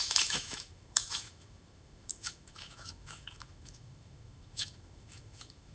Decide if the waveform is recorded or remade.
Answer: remade